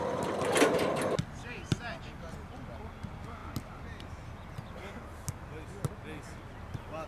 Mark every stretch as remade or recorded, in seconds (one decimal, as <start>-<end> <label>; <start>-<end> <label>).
0.0-1.4 recorded; 1.4-2.0 remade; 2.0-7.1 recorded